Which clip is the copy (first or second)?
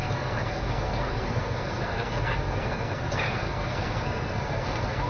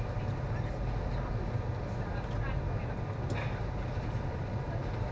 first